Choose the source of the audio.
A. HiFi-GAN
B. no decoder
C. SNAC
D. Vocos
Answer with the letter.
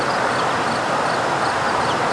B